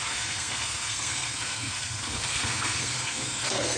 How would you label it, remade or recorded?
remade